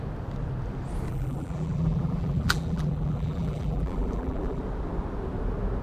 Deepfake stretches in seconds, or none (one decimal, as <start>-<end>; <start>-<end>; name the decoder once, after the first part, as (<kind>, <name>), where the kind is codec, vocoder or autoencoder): 1.1-4.6 (vocoder, BigVGAN v2)